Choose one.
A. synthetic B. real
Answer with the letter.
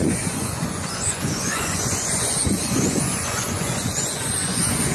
A